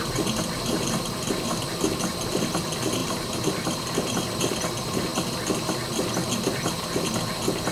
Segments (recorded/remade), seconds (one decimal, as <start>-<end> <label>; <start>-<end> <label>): 0.0-3.0 recorded; 3.0-4.3 remade; 4.3-7.7 recorded